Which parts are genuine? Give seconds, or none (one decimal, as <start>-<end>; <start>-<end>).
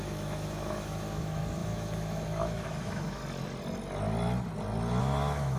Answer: 3.2-5.0